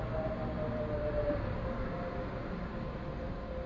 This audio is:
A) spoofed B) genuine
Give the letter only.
B